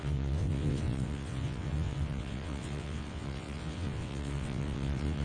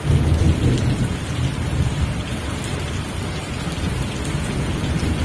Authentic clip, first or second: second